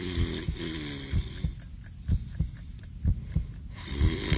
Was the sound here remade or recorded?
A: recorded